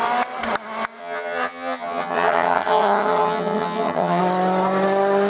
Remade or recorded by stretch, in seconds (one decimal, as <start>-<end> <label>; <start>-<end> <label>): 0.0-1.0 recorded; 1.0-4.2 remade; 4.2-5.3 recorded